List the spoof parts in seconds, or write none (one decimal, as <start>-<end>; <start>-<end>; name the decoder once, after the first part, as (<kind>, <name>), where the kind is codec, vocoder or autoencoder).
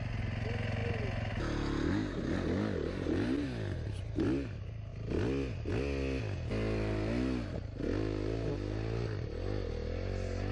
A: none